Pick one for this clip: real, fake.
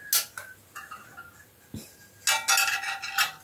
real